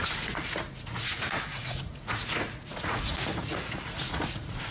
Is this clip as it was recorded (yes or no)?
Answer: no